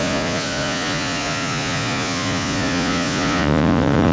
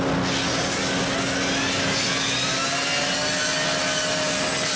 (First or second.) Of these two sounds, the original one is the second